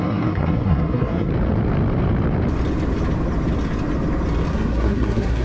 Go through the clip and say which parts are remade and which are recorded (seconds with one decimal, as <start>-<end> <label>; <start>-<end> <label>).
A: 0.0-1.3 remade; 1.3-4.5 recorded; 4.5-5.4 remade